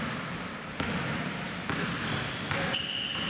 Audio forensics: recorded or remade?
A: recorded